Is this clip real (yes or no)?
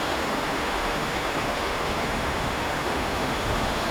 no